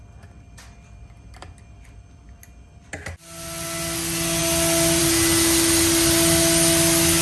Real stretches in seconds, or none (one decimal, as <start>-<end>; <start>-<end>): 0.0-7.2